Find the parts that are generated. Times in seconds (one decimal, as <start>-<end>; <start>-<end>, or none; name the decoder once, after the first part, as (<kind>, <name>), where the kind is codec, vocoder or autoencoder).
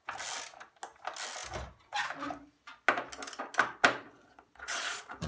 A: 4.0-5.3 (vocoder, Vocos)